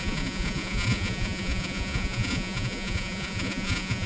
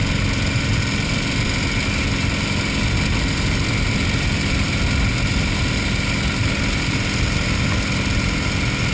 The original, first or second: second